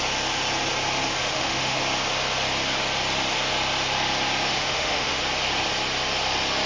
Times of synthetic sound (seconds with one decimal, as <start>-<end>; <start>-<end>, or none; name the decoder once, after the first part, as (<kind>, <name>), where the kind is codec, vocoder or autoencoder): 1.2-1.8 (autoencoder, DAC-VAE); 4.5-5.2